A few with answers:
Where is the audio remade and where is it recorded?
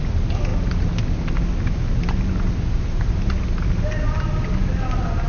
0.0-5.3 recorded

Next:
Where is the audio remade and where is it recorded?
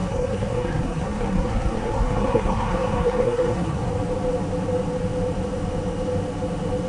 0.0-3.9 remade; 3.9-6.9 recorded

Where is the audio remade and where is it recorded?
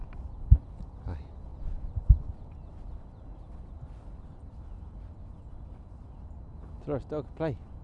0.0-7.8 recorded